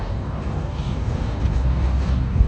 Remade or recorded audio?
remade